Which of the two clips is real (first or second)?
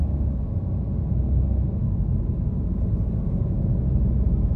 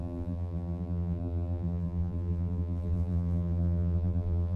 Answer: first